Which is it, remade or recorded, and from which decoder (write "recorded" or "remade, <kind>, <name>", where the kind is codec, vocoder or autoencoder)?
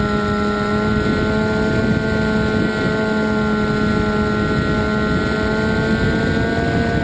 recorded